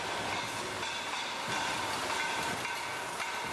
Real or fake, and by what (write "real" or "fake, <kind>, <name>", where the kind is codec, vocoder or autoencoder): real